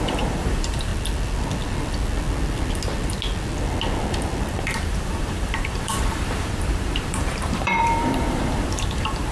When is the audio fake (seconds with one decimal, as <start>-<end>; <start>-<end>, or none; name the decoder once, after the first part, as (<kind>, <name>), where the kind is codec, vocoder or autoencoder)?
0.0-0.9 (vocoder, BigVGAN v2); 4.6-9.3